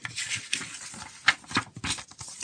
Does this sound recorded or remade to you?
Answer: recorded